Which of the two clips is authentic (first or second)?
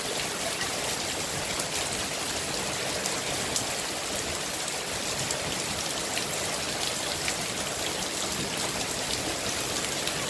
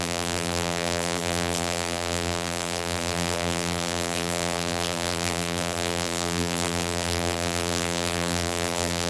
first